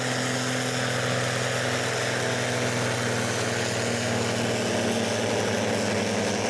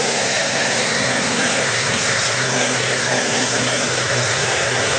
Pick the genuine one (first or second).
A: first